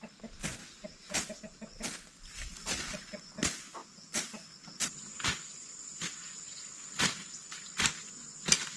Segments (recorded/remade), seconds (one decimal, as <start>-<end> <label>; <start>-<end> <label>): 0.0-8.8 recorded